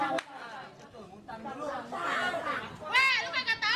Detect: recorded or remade recorded